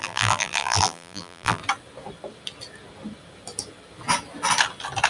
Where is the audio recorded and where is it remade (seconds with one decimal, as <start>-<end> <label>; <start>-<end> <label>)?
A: 0.0-1.6 remade; 1.6-5.1 recorded